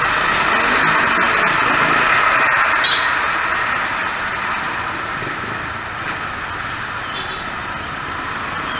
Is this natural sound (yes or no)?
yes